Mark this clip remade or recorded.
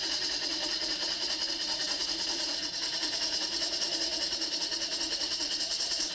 remade